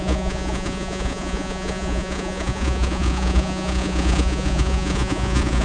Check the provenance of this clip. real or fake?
fake